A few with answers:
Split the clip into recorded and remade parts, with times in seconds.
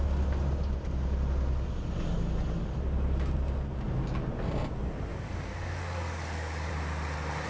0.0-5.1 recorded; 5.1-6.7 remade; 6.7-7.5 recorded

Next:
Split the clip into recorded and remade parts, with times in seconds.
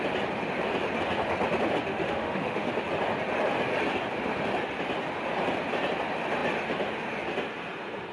0.0-1.9 recorded; 1.9-2.7 remade; 2.7-8.1 recorded